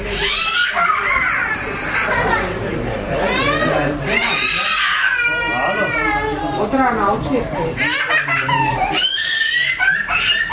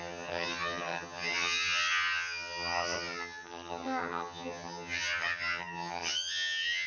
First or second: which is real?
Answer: first